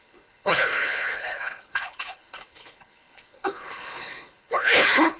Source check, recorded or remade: remade